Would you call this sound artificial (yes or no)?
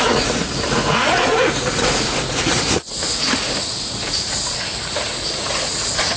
yes